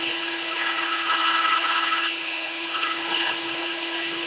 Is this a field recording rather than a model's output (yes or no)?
no